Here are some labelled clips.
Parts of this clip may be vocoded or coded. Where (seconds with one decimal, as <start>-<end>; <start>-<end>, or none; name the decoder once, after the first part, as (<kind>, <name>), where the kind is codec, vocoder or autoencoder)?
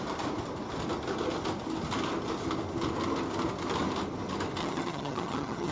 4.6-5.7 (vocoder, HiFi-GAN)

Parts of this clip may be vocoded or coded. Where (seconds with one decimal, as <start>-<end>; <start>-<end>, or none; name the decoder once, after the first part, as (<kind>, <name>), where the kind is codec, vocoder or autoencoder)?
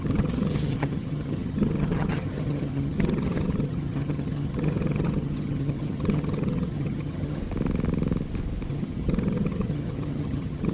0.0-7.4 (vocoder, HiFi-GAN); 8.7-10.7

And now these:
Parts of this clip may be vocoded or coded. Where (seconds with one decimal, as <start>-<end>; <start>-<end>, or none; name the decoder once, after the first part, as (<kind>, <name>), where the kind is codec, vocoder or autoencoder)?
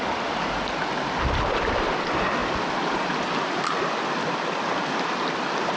none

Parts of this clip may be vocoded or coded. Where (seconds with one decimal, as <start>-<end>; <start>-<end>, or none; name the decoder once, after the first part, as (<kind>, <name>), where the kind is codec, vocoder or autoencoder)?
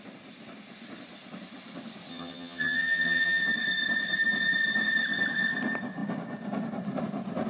2.1-3.4 (vocoder, HiFi-GAN)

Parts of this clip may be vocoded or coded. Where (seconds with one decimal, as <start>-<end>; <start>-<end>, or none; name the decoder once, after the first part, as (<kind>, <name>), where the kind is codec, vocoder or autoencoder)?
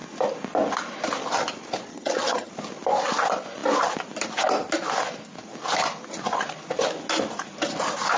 1.9-2.5 (vocoder, HiFi-GAN)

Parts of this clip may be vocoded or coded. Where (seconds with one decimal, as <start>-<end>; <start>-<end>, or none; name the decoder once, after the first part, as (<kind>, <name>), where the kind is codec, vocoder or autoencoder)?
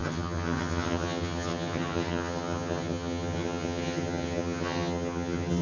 0.0-5.6 (vocoder, HiFi-GAN)